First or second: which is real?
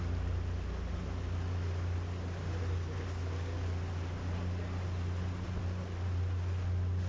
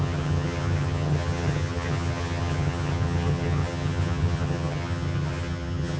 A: first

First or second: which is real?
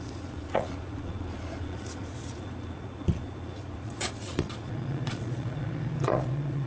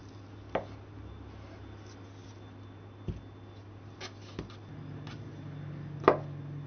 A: second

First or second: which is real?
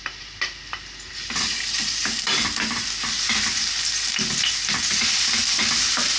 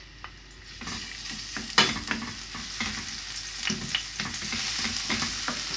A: second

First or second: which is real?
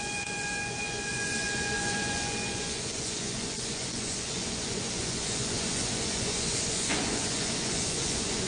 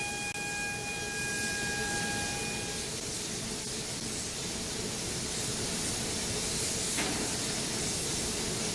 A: second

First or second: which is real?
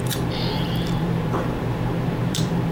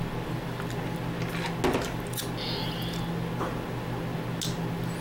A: second